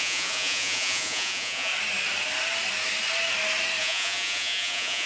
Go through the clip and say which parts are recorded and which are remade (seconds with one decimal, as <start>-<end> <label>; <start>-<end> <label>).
0.0-1.7 remade; 1.7-3.8 recorded; 3.8-5.1 remade